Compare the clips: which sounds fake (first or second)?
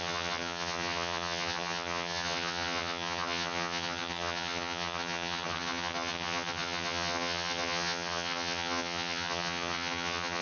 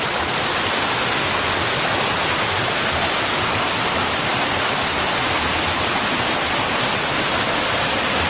first